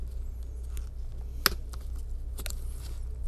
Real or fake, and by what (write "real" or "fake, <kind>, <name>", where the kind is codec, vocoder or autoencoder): real